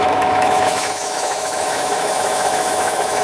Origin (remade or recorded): remade